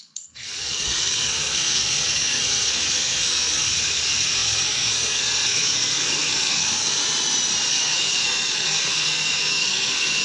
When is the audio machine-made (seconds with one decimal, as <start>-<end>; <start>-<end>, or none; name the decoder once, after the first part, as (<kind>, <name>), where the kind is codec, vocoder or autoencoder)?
0.0-7.0 (codec, SNAC); 7.7-10.2